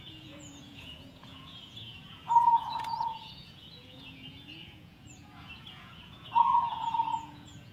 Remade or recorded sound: remade